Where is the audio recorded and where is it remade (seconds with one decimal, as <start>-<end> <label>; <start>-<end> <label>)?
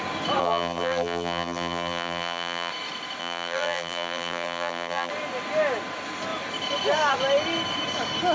0.0-0.4 recorded; 0.4-2.7 remade; 2.7-3.2 recorded; 3.2-5.1 remade; 5.1-8.3 recorded